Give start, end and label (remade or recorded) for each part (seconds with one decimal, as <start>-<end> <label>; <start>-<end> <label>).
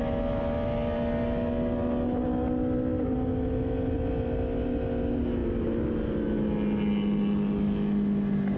0.0-8.6 recorded